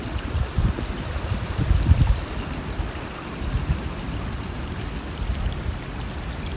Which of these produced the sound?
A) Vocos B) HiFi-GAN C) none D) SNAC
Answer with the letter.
C